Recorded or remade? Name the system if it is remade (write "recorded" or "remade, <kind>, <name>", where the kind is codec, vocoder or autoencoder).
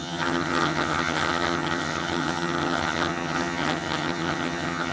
remade, vocoder, HiFi-GAN